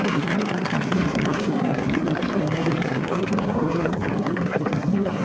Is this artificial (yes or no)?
yes